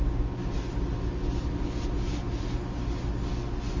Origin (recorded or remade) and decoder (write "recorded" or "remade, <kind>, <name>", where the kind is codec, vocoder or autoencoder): recorded